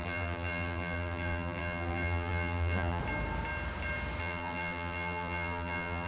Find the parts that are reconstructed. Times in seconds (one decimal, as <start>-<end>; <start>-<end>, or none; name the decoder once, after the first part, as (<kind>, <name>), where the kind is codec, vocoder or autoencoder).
0.0-3.0 (vocoder, BigVGAN v2); 4.2-6.1